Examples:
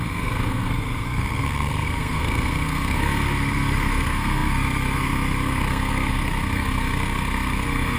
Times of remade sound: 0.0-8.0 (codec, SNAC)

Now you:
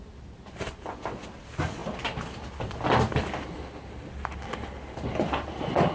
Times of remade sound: none

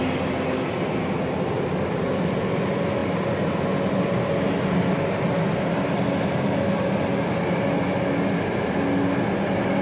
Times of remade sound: none

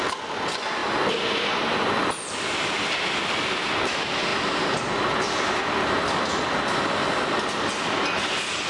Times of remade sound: none

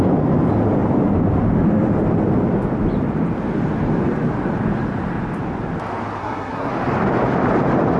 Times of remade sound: 6.2-6.7 (codec, SNAC)